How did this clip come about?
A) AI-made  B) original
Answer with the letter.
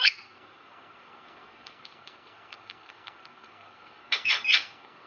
A